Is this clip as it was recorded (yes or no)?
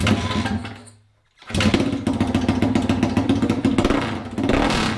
yes